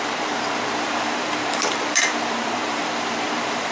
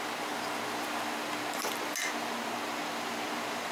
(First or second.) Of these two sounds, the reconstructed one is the first